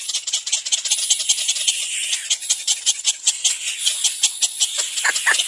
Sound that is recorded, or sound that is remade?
remade